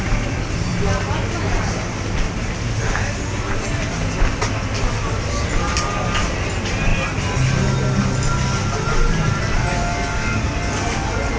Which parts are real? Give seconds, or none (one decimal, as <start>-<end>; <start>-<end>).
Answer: 0.0-11.4